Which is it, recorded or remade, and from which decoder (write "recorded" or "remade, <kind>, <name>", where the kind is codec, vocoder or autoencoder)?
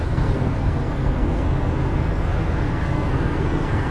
remade, codec, SNAC